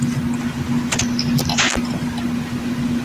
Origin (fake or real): real